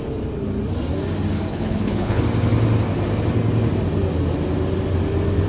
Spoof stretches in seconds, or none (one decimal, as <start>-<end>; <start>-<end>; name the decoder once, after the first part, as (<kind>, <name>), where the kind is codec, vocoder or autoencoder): 1.5-2.2 (codec, HILCodec)